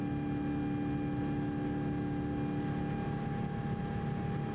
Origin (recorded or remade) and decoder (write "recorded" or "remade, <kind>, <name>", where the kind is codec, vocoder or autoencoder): recorded